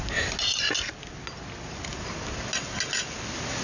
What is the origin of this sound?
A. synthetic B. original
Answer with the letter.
B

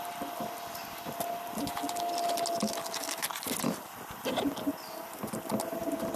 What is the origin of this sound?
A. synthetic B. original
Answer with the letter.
B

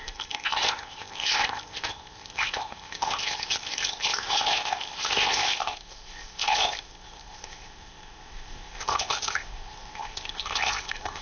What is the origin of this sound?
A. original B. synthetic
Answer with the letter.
B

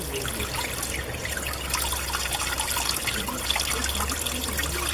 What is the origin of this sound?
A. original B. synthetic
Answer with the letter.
A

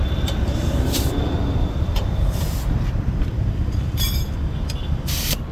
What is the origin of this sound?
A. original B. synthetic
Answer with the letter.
B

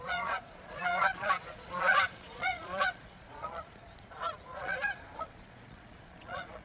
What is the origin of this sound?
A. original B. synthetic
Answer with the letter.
B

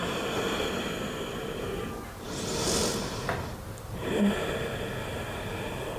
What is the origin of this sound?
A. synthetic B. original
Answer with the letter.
B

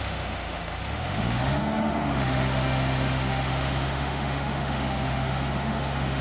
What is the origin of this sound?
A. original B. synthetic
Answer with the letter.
B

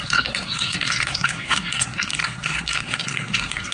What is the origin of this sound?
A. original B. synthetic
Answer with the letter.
B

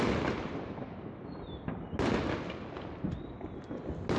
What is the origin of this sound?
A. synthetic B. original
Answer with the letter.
B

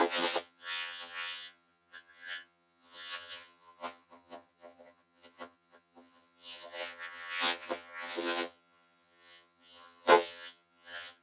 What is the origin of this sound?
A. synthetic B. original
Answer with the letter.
A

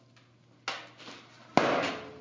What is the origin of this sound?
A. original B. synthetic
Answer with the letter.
A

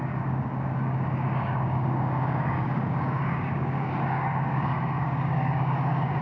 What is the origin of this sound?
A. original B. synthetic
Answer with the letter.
B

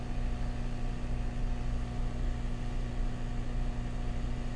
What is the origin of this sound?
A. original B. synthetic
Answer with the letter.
A